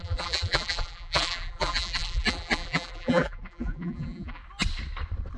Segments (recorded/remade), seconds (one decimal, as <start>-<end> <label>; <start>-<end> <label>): 0.0-4.4 remade; 4.4-5.4 recorded